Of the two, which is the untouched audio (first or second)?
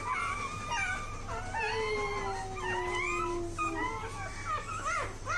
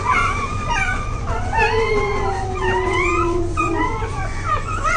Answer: first